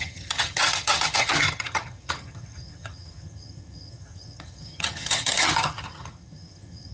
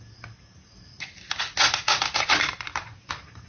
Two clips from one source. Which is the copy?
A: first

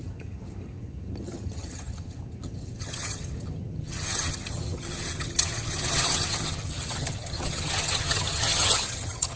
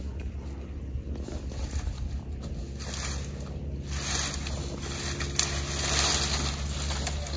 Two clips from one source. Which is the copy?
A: first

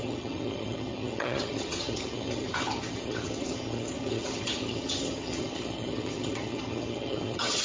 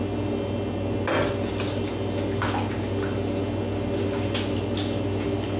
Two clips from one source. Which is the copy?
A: first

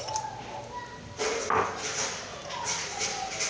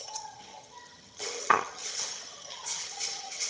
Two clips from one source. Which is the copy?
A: second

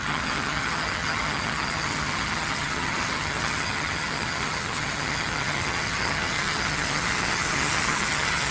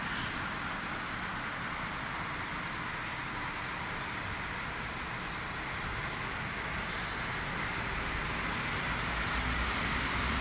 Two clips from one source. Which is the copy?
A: first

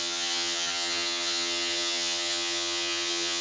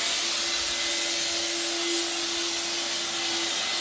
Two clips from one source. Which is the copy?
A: first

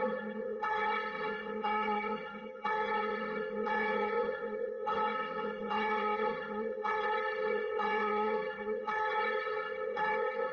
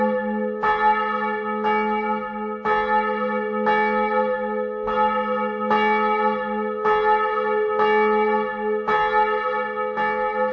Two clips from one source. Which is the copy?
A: first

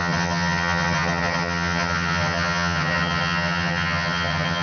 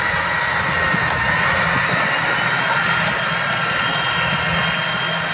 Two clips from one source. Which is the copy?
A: first